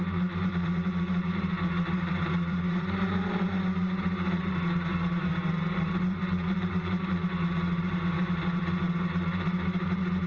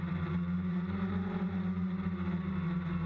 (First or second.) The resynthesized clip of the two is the first